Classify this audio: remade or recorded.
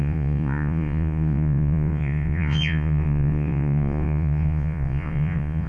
remade